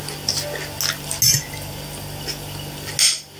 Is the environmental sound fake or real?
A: real